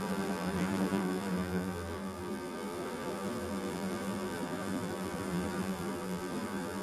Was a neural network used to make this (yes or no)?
yes